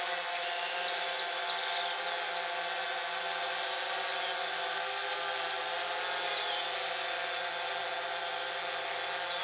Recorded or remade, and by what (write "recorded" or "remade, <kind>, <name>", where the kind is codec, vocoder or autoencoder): recorded